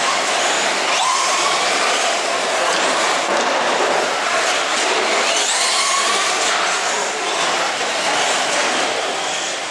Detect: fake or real real